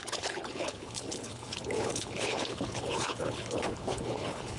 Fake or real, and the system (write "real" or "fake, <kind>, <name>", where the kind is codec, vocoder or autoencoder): fake, codec, HILCodec